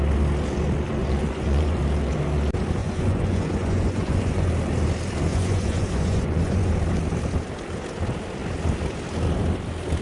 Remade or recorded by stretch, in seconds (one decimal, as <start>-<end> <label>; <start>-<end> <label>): 0.0-1.0 recorded; 1.0-1.8 remade; 1.8-2.8 recorded; 2.8-4.5 remade; 4.5-5.3 recorded; 5.3-6.7 remade; 6.7-10.0 recorded

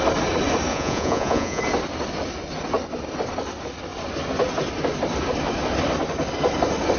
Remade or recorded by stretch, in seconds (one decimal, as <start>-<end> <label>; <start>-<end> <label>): 0.0-0.7 recorded; 0.7-1.6 remade; 1.6-7.0 recorded